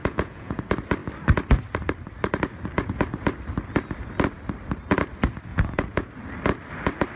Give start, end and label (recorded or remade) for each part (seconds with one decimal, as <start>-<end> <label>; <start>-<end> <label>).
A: 0.0-0.6 remade; 0.6-5.5 recorded; 5.5-6.1 remade; 6.1-7.2 recorded